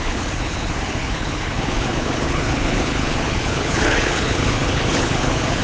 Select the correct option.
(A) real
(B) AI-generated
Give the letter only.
B